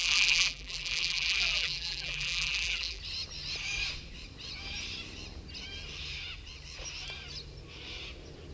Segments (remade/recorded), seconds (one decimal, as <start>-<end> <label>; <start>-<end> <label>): 0.0-3.0 remade; 3.0-8.5 recorded